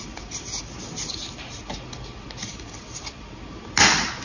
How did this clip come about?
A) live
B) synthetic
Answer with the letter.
A